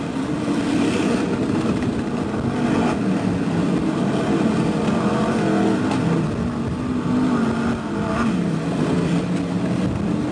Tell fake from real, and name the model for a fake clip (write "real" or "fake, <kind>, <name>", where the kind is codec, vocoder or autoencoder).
real